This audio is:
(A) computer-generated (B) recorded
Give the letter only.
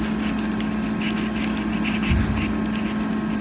B